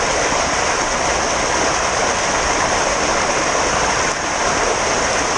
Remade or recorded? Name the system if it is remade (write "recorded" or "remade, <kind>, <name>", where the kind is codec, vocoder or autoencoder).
remade, vocoder, BigVGAN v2